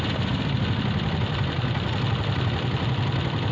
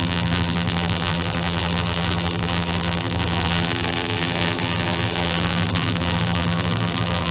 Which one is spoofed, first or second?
second